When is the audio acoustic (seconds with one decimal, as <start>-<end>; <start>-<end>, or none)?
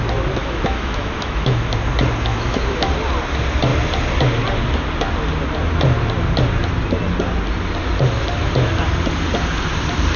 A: 0.0-0.4; 1.6-2.3; 2.9-10.2